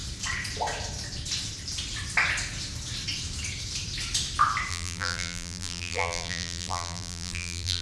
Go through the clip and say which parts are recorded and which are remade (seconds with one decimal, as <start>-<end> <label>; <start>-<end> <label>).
0.0-4.7 recorded; 4.7-7.8 remade